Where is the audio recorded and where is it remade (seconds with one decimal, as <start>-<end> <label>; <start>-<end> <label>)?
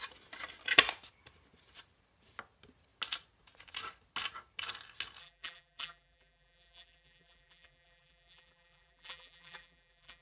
0.0-5.2 recorded; 5.2-10.2 remade